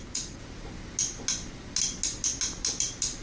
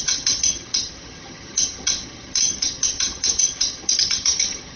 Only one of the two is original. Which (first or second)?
first